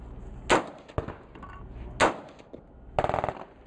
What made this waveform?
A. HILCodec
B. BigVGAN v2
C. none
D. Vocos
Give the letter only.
C